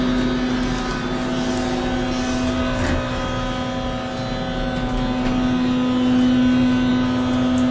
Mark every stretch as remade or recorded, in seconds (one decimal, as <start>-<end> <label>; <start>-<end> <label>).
0.0-7.7 recorded